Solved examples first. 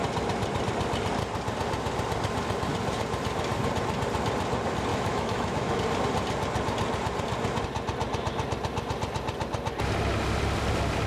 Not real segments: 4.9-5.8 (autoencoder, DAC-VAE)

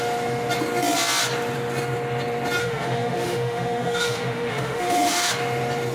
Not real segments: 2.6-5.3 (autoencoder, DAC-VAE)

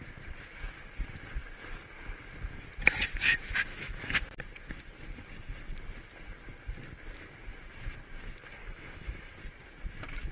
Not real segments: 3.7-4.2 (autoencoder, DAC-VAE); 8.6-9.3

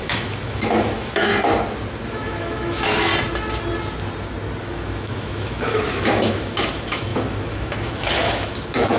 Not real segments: 0.0-1.3 (autoencoder, DAC-VAE); 2.1-3.1; 4.6-9.0

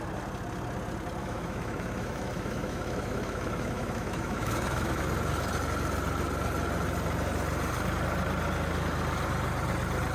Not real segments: 1.2-5.1 (autoencoder, DAC-VAE)

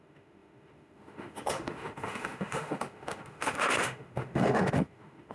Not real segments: 0.0-5.3 (autoencoder, DAC-VAE)